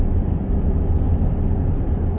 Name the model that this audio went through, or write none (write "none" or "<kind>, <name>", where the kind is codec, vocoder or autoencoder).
none